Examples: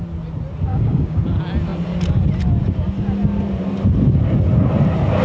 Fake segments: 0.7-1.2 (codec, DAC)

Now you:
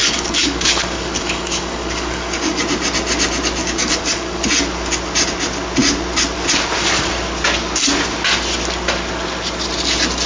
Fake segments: 0.0-2.6 (codec, DAC); 3.6-4.4

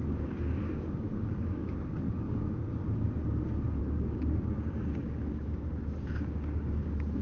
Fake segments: 0.0-2.8 (codec, DAC); 3.8-7.2

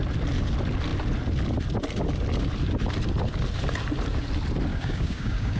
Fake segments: 4.7-5.6 (codec, DAC)

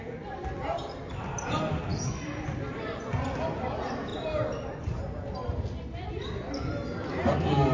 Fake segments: none